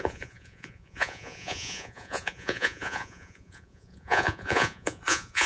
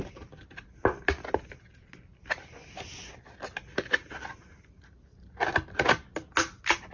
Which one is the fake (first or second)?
first